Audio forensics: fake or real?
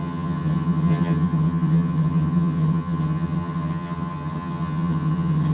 fake